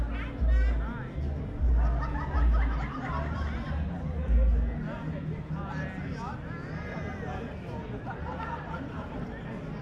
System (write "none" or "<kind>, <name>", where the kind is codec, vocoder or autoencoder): none